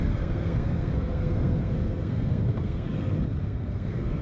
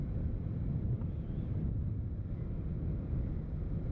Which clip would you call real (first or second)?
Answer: second